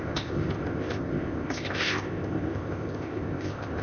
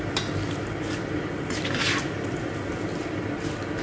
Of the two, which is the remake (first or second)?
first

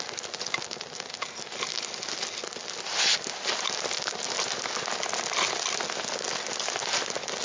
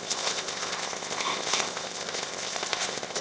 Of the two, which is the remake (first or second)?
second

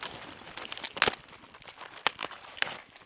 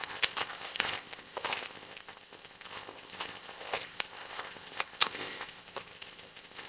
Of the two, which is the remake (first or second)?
second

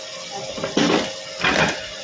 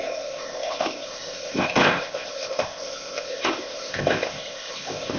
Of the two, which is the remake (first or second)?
second